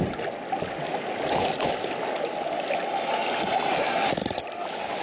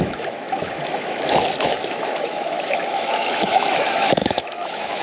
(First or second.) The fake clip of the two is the second